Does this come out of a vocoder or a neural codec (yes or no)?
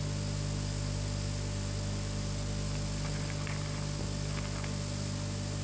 no